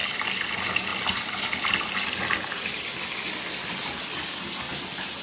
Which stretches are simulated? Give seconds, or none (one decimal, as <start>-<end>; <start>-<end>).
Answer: none